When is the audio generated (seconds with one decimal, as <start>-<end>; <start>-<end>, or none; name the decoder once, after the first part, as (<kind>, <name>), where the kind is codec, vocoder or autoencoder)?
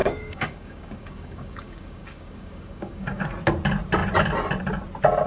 0.0-3.2 (codec, DAC)